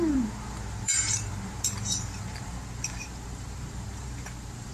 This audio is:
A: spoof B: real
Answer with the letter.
A